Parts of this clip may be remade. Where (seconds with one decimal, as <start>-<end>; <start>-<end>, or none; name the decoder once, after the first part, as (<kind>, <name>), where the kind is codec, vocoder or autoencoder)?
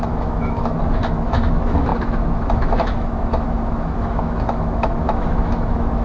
0.0-6.0 (autoencoder, DAC-VAE)